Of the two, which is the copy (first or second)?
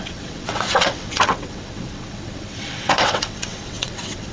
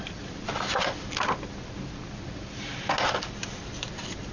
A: first